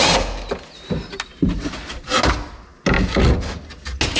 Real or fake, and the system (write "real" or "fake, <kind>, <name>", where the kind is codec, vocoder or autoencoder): real